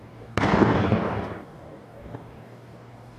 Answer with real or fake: fake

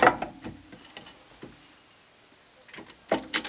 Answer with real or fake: real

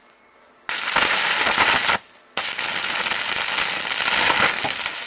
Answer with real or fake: real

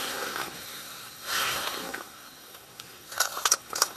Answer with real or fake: fake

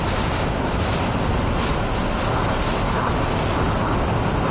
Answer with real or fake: real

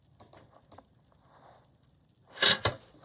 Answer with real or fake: real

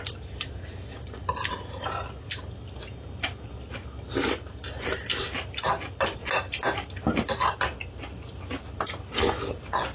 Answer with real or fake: real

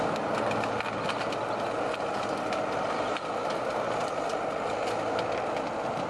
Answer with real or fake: real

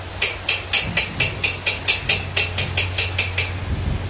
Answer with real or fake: real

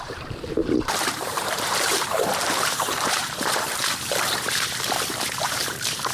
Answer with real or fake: fake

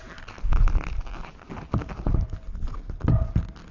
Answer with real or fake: real